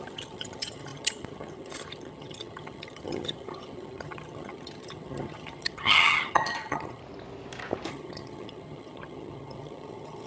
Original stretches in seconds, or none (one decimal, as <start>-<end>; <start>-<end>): 7.0-7.9